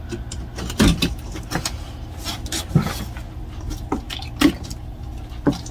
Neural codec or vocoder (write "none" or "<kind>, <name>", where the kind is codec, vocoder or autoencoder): none